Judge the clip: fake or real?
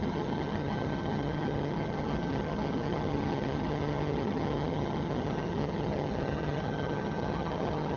fake